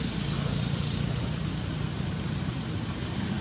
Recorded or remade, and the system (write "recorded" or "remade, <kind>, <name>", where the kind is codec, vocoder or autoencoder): recorded